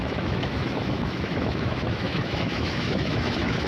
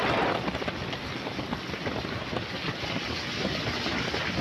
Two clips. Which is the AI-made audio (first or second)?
first